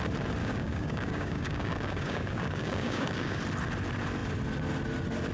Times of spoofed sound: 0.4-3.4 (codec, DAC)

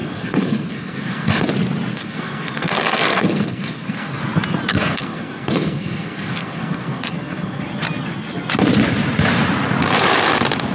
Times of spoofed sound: 0.0-1.4 (codec, SNAC); 1.9-4.2; 4.7-7.6

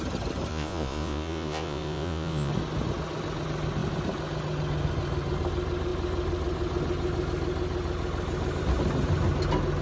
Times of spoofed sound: 0.5-2.5 (vocoder, Vocos)

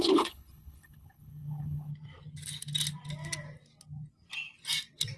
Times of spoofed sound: 0.0-1.9 (codec, HILCodec)

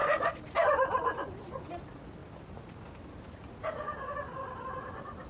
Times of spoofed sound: none

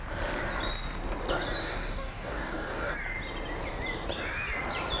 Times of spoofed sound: 1.6-2.9 (codec, DAC)

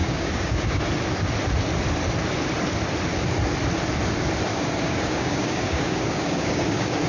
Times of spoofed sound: 0.0-0.8 (codec, DAC); 4.5-7.1